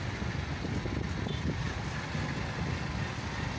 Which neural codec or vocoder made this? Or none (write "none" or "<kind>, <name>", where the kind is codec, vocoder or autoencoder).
none